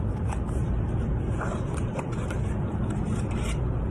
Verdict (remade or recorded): remade